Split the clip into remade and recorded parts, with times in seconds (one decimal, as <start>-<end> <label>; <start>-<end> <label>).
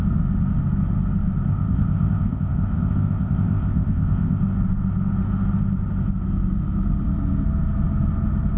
0.0-1.5 recorded; 1.5-4.4 remade; 4.4-8.6 recorded